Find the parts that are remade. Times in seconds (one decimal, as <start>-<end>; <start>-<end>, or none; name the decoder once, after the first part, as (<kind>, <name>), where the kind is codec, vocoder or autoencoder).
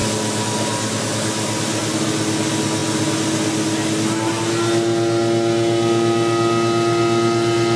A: none